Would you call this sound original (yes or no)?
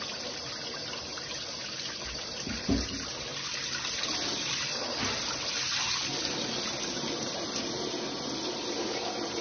yes